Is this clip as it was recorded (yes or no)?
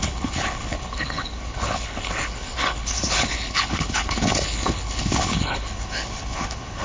no